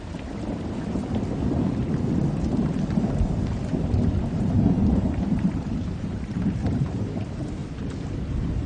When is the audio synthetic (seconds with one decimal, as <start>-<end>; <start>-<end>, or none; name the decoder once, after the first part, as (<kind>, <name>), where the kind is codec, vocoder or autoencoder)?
0.0-1.0 (vocoder, BigVGAN v2); 4.2-7.6